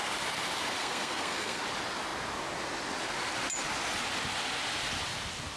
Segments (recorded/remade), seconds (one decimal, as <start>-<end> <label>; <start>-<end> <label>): 0.0-0.8 recorded; 0.8-1.6 remade; 1.6-5.6 recorded